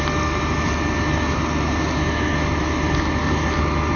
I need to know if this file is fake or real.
real